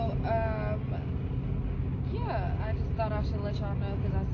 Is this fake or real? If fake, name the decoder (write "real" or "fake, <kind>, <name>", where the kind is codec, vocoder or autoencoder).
real